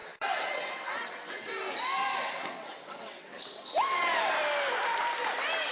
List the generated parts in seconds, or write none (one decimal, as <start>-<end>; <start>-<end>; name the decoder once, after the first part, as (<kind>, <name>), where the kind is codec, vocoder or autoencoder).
0.0-1.5 (vocoder, WaveNeXt); 2.1-4.3